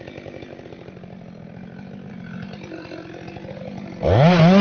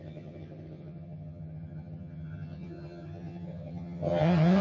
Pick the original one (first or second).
first